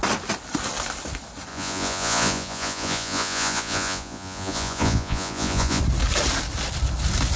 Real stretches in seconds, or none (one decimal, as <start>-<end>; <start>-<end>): 0.0-1.5; 5.8-7.4